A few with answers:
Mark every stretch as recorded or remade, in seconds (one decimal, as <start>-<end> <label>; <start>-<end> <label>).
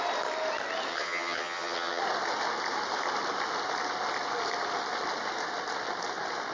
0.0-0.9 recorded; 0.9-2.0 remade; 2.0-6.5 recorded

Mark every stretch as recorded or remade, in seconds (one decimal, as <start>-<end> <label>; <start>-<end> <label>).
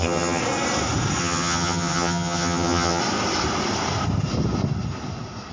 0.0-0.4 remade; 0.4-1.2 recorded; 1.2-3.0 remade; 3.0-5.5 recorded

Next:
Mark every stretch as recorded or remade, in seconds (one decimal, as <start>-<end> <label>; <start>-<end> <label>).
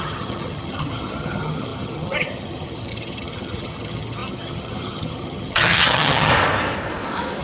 0.0-6.3 remade; 6.3-7.4 recorded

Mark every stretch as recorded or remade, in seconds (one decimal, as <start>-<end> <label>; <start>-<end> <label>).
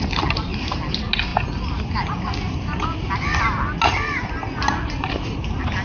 0.0-5.8 recorded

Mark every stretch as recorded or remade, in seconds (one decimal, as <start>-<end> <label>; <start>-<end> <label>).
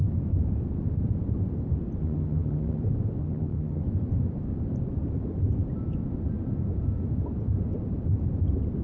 0.0-2.0 recorded; 2.0-2.8 remade; 2.8-3.2 recorded; 3.2-3.8 remade; 3.8-8.8 recorded